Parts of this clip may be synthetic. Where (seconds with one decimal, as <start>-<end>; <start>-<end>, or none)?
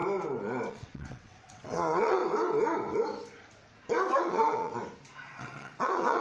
0.7-2.2; 4.2-4.7; 5.3-6.2